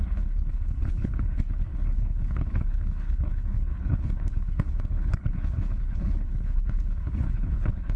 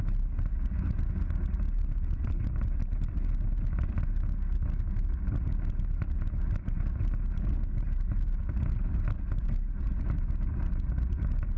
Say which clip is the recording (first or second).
second